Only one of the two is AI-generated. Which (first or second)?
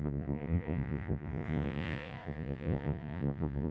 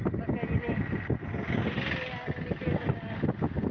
first